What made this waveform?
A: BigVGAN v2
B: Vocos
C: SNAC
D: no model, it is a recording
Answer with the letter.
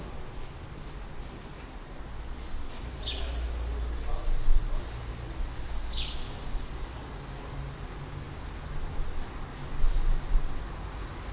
D